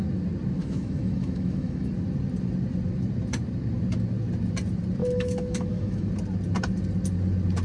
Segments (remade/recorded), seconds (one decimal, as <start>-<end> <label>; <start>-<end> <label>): 0.0-0.6 recorded; 0.6-1.9 remade; 1.9-5.0 recorded; 5.0-6.1 remade; 6.1-7.6 recorded